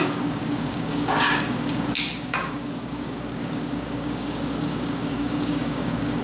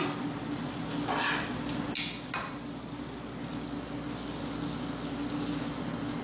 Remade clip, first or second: first